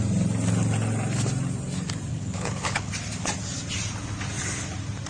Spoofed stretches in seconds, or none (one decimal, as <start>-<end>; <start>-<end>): 2.1-2.9